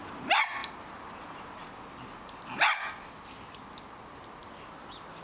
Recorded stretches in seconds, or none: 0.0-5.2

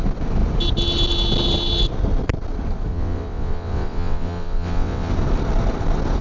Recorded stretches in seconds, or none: 0.0-2.9; 5.1-6.2

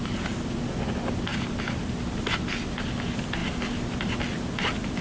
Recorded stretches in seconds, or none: 0.0-5.0

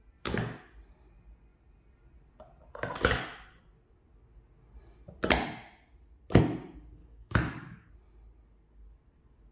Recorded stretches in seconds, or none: 0.0-7.0; 7.9-9.5

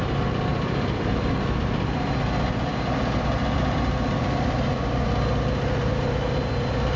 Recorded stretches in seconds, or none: 0.0-0.5; 4.7-7.0

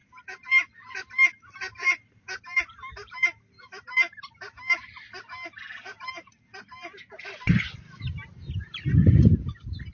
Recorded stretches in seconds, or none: 0.0-9.9

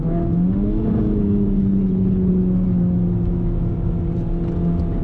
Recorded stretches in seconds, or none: 0.0-1.6; 2.3-5.0